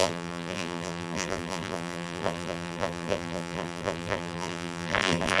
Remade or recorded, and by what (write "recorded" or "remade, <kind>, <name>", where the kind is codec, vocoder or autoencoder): remade, vocoder, BigVGAN v2